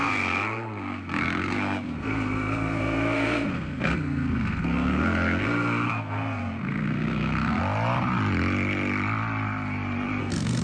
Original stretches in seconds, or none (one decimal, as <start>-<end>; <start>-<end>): 7.6-10.2